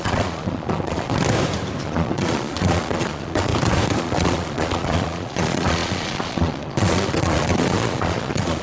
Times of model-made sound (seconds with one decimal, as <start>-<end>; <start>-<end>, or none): 0.0-1.1; 1.8-3.5; 4.0-8.6